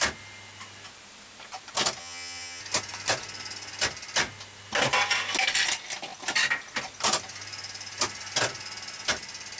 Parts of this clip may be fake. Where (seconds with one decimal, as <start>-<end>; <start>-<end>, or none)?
2.0-2.6